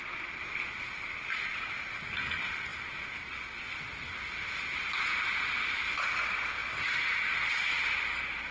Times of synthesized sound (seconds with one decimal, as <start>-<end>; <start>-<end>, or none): none